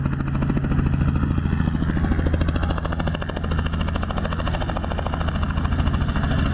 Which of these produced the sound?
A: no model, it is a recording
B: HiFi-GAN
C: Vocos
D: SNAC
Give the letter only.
A